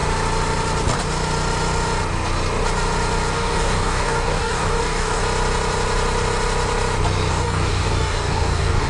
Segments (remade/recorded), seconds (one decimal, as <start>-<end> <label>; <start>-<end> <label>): 0.0-3.3 recorded; 3.3-5.2 remade; 5.2-7.3 recorded; 7.3-8.9 remade